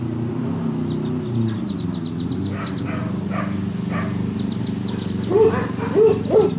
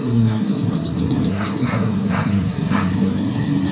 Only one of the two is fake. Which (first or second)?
second